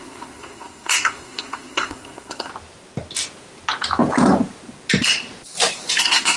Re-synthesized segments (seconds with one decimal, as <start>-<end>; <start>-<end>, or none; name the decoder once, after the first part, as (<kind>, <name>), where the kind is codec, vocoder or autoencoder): 0.0-2.5 (codec, SNAC); 6.0-6.4